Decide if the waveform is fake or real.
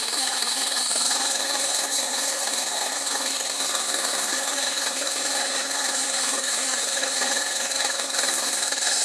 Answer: fake